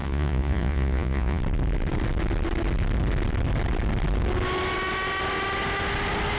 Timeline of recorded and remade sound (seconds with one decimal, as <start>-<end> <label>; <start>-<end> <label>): 0.0-1.4 remade; 1.4-6.4 recorded